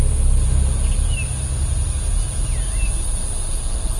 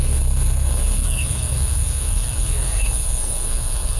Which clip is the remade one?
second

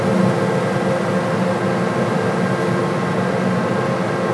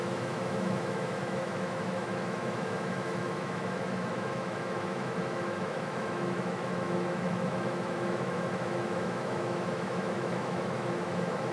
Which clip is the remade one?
second